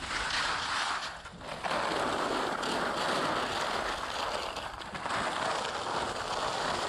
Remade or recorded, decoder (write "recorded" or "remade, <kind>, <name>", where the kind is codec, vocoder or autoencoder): recorded